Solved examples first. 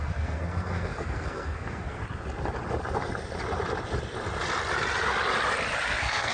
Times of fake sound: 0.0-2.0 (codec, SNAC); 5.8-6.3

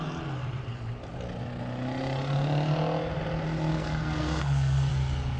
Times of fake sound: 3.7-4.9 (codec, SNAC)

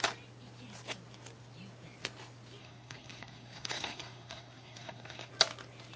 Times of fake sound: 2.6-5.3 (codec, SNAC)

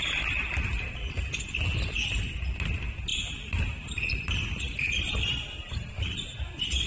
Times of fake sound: none

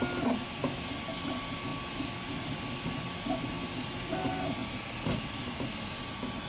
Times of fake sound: none